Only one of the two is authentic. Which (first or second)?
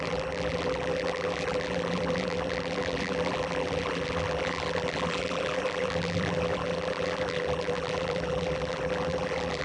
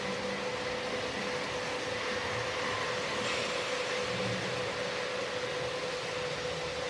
second